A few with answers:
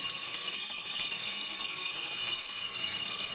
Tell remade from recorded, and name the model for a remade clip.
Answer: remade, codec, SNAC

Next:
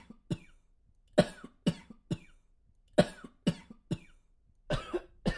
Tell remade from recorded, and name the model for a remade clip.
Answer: recorded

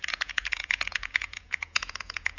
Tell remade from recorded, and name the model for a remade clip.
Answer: remade, vocoder, Vocos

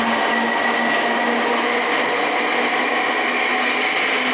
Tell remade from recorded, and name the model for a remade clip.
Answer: recorded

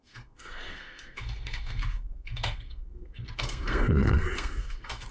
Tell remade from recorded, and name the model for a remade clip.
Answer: remade, codec, SNAC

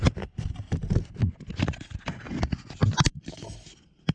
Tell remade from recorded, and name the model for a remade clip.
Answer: recorded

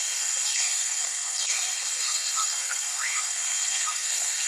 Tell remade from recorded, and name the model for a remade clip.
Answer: remade, codec, SNAC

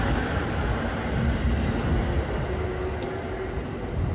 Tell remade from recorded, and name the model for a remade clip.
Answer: recorded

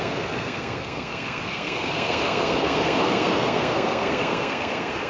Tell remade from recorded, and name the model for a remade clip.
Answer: remade, codec, SNAC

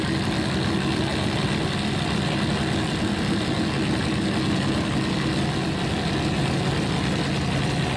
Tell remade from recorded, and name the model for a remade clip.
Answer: recorded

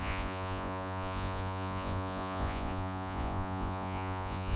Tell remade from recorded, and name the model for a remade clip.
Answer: remade, vocoder, Vocos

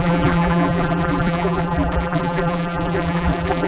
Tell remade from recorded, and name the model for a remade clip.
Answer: remade, vocoder, BigVGAN v2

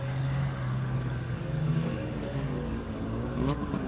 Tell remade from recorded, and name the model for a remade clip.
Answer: remade, codec, DAC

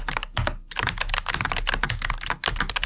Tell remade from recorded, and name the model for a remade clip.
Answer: recorded